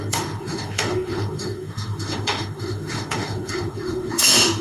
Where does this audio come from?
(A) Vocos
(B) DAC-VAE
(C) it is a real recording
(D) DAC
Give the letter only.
B